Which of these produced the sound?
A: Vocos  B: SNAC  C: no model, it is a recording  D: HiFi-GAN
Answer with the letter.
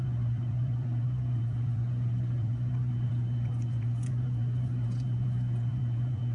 A